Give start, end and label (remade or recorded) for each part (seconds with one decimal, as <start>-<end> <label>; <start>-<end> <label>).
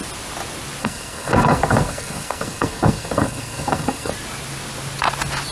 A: 0.0-0.8 recorded; 0.8-4.1 remade; 4.1-5.5 recorded